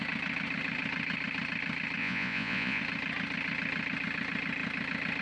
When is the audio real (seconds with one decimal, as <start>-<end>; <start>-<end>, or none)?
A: 0.0-2.0; 2.8-5.2